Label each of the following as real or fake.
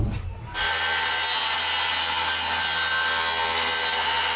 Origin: real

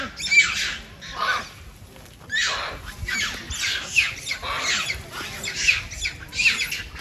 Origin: real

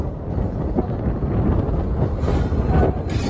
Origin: real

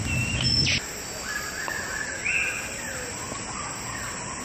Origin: real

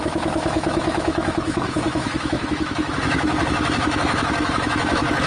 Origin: fake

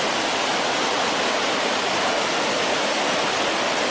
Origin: real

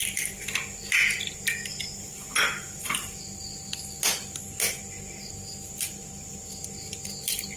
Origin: real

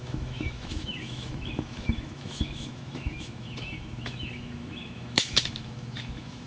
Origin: fake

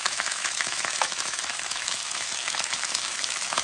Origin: fake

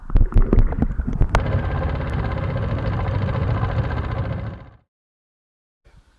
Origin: real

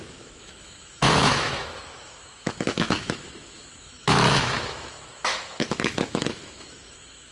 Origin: fake